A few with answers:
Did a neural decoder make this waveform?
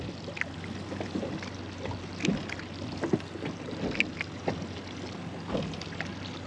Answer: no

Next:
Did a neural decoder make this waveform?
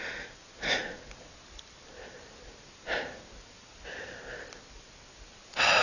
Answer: no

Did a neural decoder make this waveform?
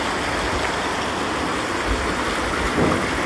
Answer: no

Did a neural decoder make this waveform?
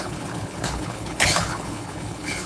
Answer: yes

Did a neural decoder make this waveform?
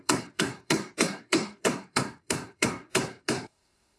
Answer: yes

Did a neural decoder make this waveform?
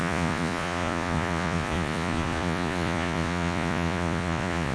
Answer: yes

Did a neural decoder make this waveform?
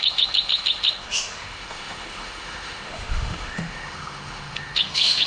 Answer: yes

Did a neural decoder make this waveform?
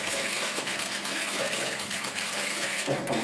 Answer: yes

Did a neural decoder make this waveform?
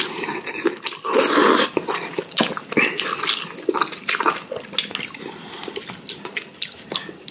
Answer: no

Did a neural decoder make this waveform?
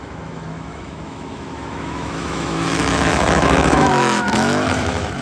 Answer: yes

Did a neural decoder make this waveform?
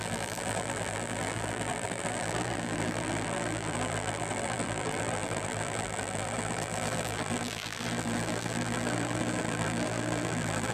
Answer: yes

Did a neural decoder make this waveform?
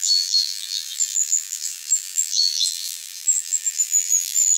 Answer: yes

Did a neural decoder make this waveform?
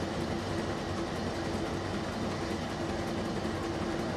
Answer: no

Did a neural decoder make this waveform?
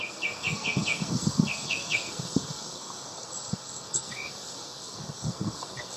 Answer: yes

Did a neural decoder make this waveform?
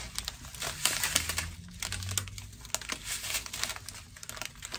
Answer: no